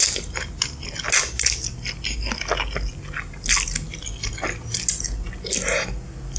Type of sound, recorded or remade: recorded